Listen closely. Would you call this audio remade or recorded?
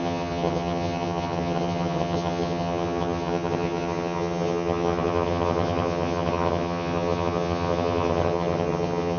remade